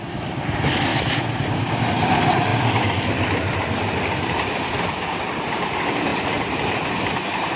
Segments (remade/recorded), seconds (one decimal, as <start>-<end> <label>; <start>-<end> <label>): 0.0-0.9 remade; 0.9-1.8 recorded; 1.8-7.6 remade